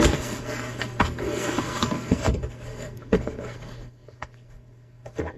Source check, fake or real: fake